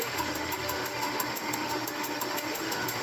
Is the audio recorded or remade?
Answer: remade